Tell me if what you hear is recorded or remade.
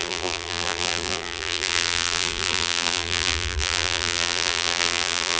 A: remade